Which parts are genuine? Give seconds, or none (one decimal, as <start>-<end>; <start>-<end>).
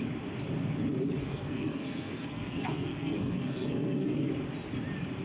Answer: 0.0-1.2; 4.3-5.2